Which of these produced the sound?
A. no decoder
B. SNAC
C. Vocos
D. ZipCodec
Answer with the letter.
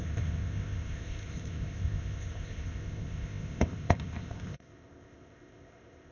D